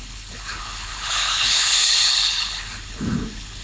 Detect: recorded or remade remade